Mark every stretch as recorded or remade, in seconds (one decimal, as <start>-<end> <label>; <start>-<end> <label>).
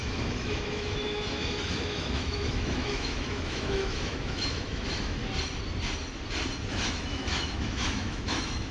0.0-5.2 remade; 5.2-6.7 recorded; 6.7-8.7 remade